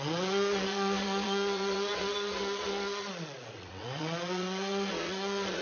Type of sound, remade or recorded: remade